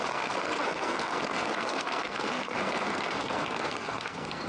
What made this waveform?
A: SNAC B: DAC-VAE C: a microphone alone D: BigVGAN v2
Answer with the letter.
A